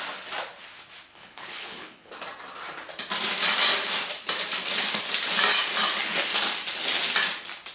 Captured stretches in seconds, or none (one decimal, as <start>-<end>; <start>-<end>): 0.0-1.1; 2.1-7.7